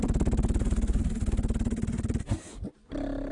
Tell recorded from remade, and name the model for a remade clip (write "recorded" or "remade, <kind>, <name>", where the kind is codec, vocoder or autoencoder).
recorded